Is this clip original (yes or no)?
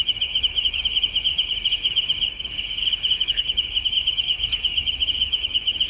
no